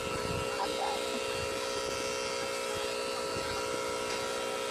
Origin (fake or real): real